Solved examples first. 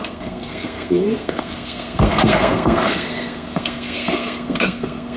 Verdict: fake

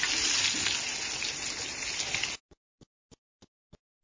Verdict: real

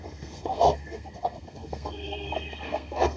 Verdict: fake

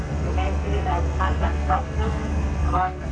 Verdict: fake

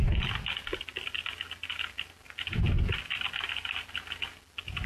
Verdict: real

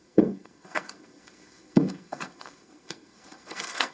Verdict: fake